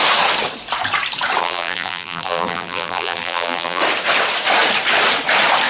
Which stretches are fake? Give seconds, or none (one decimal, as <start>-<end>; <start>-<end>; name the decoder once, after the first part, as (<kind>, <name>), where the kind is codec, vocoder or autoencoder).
1.4-3.8 (vocoder, BigVGAN v2)